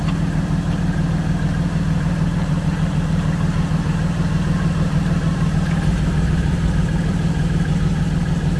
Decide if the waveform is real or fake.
fake